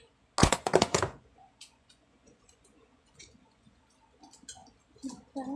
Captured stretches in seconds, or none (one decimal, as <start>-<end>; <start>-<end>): 0.0-0.4; 3.8-5.6